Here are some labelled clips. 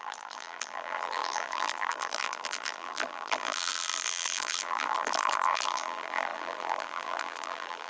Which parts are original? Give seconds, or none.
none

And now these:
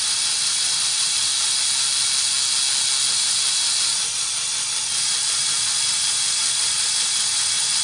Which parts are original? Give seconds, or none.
1.3-3.1; 4.3-5.9